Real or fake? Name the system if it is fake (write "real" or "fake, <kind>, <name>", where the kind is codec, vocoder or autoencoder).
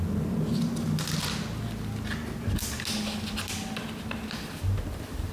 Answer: real